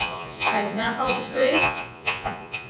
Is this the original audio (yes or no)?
no